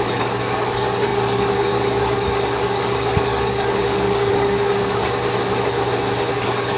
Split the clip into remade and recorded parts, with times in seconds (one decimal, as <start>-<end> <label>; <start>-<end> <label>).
0.0-5.0 remade; 5.0-6.3 recorded; 6.3-6.8 remade